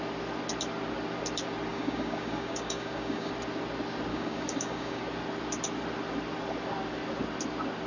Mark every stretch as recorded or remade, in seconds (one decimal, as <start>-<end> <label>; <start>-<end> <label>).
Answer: 0.0-1.7 recorded; 1.7-3.3 remade; 3.3-4.1 recorded; 4.1-5.0 remade; 5.0-7.9 recorded